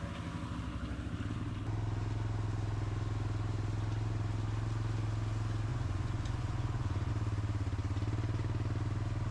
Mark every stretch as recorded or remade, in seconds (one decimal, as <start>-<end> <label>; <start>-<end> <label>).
0.0-5.7 recorded; 5.7-7.1 remade; 7.1-9.3 recorded